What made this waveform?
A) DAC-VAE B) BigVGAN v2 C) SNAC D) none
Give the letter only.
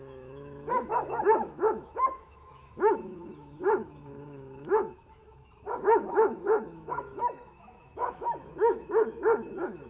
A